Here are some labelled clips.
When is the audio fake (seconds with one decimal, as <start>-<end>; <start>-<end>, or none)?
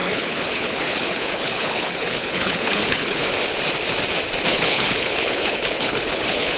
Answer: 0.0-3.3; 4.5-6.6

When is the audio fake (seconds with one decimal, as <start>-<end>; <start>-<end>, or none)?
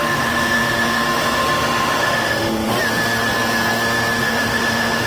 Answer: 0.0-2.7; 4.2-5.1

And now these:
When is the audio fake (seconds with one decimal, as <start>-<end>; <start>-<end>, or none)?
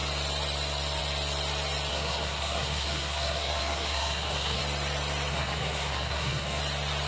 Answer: 1.9-4.6; 5.3-6.6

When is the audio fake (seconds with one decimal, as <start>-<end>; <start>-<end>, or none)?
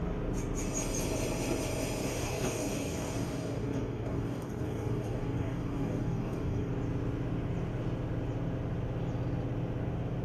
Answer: 2.0-6.7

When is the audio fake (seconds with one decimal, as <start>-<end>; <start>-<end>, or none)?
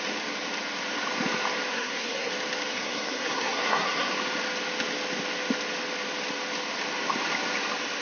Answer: 1.7-2.3; 2.7-4.1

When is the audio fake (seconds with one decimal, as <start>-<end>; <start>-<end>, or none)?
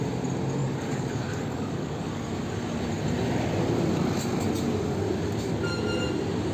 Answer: 0.6-2.4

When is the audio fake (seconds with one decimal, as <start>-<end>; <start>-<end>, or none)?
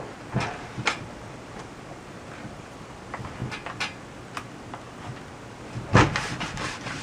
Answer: 0.0-3.4; 5.6-7.0